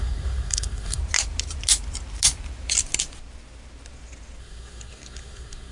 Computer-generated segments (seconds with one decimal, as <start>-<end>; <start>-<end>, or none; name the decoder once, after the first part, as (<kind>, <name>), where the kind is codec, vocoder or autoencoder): 0.0-1.0 (codec, SNAC); 4.4-5.7

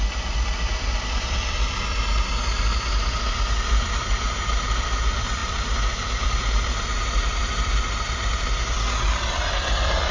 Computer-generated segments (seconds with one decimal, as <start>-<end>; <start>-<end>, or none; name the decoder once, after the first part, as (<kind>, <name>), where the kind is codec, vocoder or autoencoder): 0.0-10.1 (vocoder, BigVGAN v2)

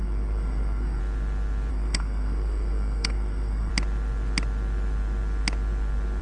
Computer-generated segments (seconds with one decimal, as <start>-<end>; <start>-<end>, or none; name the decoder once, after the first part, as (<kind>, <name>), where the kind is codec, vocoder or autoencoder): 0.0-1.0 (codec, SNAC); 1.7-3.7

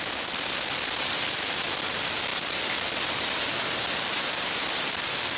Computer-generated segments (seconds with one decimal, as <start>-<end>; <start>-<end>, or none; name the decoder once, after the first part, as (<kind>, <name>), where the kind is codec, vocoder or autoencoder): none

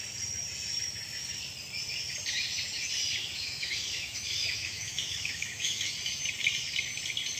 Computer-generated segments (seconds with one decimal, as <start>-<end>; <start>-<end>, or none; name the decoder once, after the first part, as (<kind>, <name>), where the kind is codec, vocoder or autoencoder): 3.2-5.9 (autoencoder, DAC-VAE)

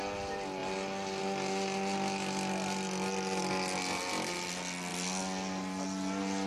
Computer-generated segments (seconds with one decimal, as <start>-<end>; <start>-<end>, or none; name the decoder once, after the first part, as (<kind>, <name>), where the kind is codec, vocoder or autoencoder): none